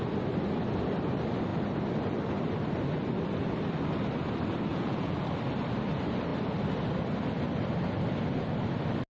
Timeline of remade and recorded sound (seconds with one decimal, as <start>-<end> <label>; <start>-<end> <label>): 0.0-4.7 recorded; 4.7-5.2 remade; 5.2-9.1 recorded